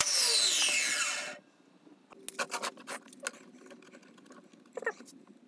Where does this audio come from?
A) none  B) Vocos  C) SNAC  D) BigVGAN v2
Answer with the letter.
A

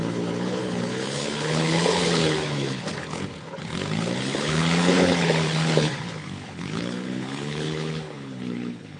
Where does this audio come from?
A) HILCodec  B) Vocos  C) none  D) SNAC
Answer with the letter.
A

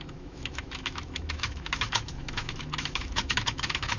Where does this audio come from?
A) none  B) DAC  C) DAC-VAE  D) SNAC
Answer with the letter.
C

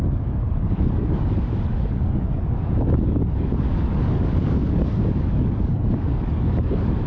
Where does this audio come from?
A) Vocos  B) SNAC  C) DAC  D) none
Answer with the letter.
C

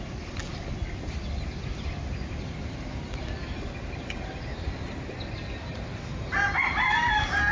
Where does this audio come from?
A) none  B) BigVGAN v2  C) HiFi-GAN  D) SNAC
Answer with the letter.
A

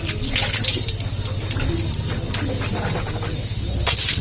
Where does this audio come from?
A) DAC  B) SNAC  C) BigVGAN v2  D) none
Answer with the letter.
D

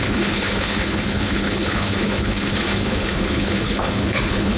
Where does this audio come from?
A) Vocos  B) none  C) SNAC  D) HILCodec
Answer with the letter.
D